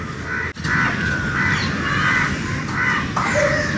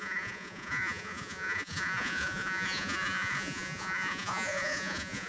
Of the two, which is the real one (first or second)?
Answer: first